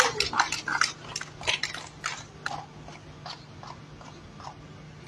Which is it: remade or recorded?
recorded